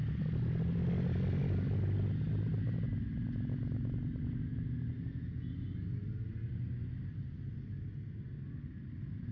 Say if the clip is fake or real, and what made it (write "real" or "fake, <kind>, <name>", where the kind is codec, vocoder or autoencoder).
real